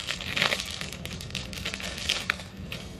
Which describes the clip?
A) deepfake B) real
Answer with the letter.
A